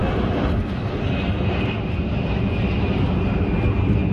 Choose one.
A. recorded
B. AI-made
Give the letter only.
A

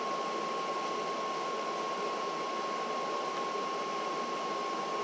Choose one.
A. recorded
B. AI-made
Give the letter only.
A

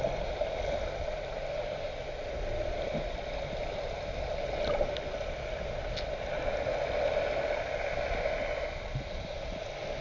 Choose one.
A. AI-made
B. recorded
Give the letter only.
B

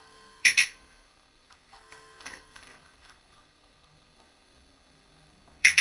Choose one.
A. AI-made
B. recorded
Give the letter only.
A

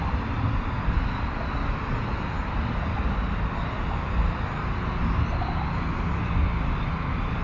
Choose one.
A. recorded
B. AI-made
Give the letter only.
A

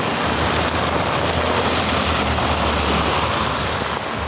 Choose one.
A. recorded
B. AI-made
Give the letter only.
A